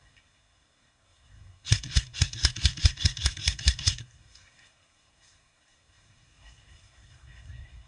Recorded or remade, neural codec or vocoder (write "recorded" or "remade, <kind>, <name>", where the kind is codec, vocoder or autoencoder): remade, codec, SNAC